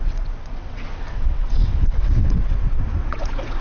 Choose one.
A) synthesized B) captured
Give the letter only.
A